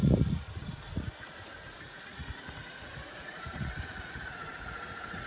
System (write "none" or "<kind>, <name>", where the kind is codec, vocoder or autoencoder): vocoder, Vocos